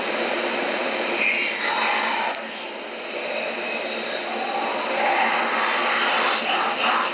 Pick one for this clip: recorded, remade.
recorded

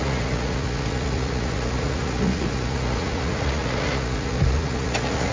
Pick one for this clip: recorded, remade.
remade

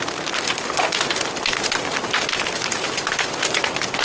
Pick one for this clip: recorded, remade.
recorded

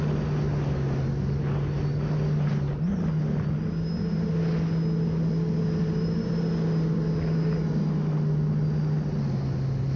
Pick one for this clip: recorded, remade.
recorded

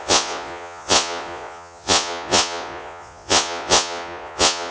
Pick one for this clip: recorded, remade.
remade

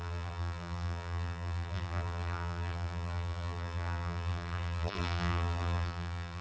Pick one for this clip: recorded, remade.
remade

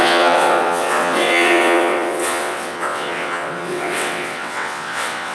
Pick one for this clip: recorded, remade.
remade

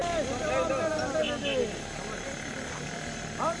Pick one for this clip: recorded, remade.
recorded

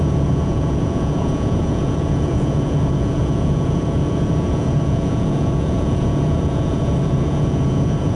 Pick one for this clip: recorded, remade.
remade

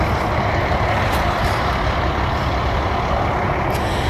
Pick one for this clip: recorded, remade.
recorded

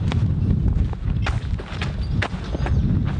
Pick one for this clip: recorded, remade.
recorded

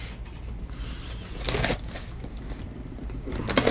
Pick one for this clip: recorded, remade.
recorded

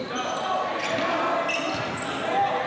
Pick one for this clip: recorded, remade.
recorded